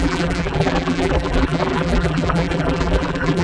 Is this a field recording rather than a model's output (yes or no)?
no